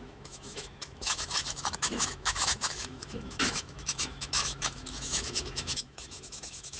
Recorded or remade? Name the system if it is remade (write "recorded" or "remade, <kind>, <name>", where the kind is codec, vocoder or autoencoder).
remade, autoencoder, DAC-VAE